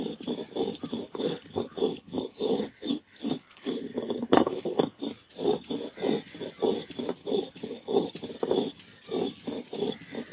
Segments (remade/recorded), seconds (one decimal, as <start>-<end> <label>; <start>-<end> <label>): 0.0-0.9 recorded; 0.9-5.0 remade; 5.0-7.2 recorded; 7.2-8.1 remade; 8.1-10.3 recorded